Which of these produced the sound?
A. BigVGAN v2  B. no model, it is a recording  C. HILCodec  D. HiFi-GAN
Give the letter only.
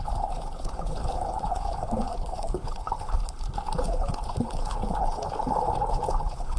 C